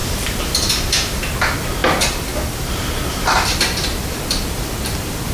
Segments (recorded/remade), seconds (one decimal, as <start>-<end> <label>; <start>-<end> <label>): 0.0-0.7 recorded; 0.7-5.3 remade